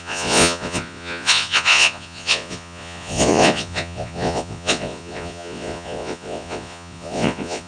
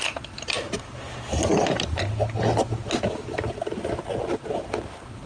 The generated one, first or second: first